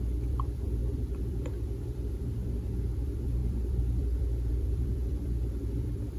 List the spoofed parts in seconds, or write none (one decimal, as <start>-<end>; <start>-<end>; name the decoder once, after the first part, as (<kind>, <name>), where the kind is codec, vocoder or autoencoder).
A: 0.0-6.2 (vocoder, BigVGAN v2)